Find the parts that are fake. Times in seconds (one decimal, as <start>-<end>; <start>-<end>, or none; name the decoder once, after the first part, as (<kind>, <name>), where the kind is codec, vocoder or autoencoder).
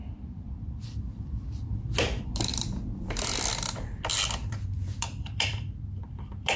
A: 0.0-6.6 (vocoder, BigVGAN v2)